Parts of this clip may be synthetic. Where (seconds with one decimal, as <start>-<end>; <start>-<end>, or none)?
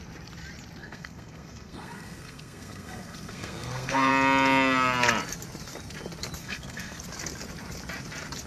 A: 0.8-4.1; 6.4-7.0